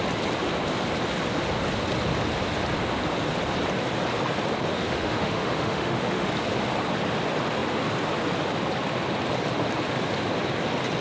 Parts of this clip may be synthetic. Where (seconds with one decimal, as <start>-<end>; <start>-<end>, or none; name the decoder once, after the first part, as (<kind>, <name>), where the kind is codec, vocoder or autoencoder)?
4.7-6.3 (autoencoder, DAC-VAE)